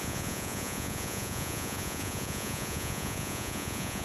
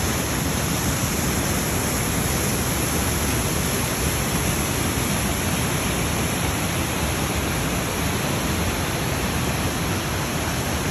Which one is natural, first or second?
second